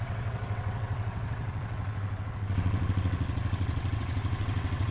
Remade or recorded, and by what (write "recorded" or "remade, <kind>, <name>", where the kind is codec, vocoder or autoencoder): remade, vocoder, WaveNeXt